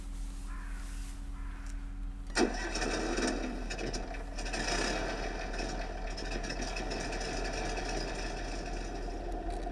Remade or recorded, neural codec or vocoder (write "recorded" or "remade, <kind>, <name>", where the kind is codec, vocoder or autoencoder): recorded